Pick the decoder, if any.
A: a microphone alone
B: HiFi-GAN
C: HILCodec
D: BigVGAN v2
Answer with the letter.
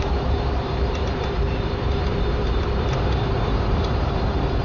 D